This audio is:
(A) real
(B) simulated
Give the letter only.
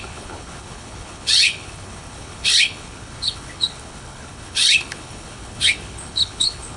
B